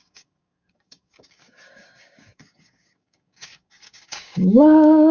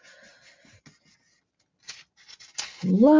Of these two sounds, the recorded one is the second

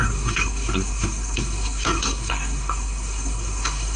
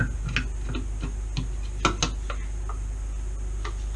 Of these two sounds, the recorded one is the second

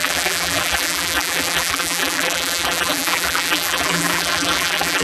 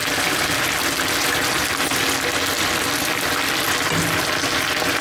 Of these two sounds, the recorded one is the second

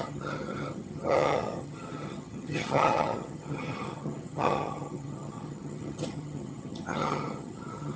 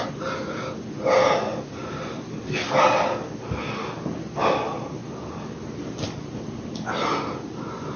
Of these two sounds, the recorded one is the second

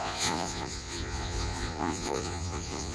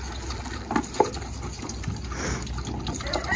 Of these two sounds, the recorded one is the second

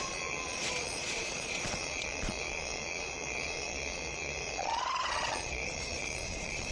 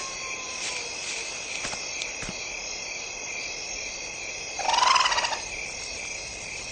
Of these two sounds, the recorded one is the second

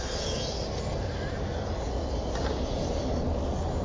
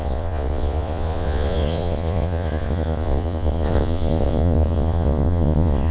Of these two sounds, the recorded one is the first